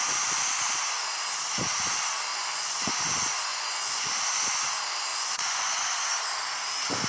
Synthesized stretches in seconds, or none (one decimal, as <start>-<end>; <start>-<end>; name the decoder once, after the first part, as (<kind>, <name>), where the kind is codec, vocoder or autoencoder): 2.3-2.9 (vocoder, Vocos); 3.5-4.1; 5.1-5.8